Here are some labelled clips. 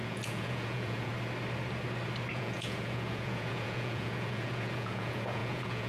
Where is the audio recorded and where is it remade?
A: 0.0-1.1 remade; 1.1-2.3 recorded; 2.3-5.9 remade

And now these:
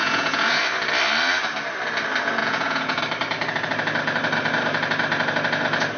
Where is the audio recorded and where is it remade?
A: 0.0-0.6 remade; 0.6-2.4 recorded; 2.4-3.0 remade; 3.0-6.0 recorded

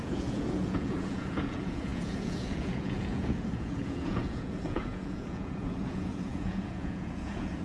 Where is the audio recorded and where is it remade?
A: 0.0-7.6 remade